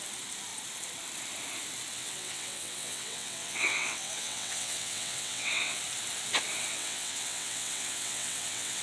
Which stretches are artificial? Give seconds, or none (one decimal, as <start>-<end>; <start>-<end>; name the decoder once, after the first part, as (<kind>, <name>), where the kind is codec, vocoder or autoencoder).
1.9-5.8 (vocoder, WaveNeXt); 6.7-8.8